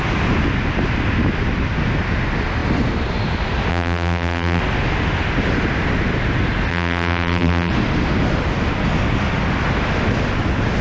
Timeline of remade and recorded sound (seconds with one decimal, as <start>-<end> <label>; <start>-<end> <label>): 0.0-3.7 recorded; 3.7-4.6 remade; 4.6-6.7 recorded; 6.7-7.7 remade; 7.7-10.8 recorded